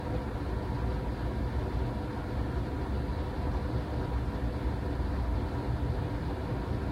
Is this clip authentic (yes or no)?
yes